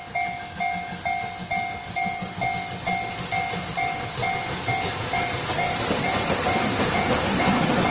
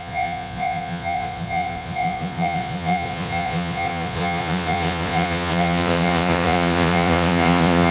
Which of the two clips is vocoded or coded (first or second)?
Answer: second